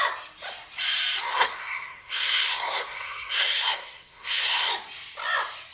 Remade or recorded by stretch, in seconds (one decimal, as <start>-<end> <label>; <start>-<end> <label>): 0.0-1.3 recorded; 1.3-4.7 remade; 4.7-5.7 recorded